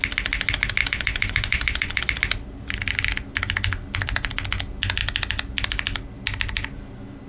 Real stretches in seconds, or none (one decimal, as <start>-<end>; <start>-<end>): 0.0-0.8; 2.0-7.3